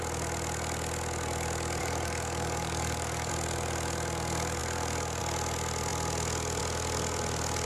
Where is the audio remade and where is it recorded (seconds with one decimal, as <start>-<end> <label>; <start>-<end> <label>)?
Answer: 0.0-1.8 recorded; 1.8-3.3 remade; 3.3-7.7 recorded